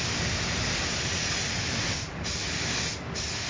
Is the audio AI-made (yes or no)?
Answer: no